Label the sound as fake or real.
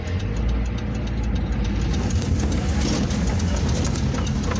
real